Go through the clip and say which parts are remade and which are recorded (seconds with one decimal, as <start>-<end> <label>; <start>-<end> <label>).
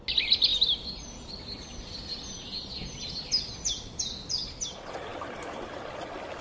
0.0-6.4 recorded